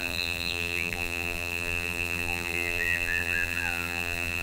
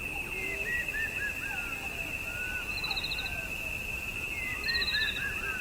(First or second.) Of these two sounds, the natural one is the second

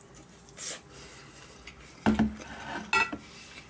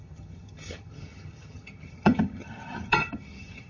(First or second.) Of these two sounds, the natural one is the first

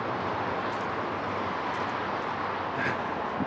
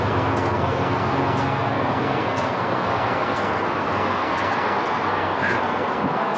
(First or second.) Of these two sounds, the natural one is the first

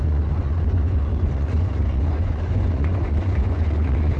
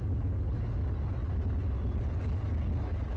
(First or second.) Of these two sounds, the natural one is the second